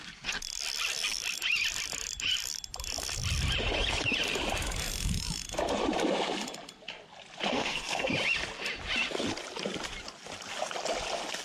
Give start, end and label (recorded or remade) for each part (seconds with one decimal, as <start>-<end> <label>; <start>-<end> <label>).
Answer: 0.0-7.5 recorded; 7.5-8.1 remade; 8.1-11.4 recorded